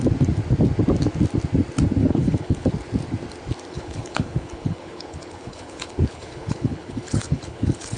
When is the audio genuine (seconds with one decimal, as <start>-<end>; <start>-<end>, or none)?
0.0-2.0; 2.7-3.7